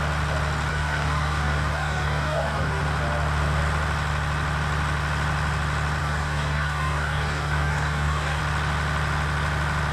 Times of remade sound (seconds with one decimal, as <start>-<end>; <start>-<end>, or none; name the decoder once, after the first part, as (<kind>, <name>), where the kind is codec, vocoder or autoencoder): 0.7-2.8 (codec, DAC); 6.0-8.4